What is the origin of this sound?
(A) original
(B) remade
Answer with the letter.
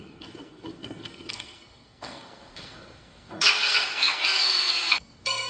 B